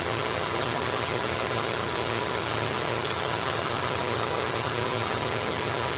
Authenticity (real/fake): fake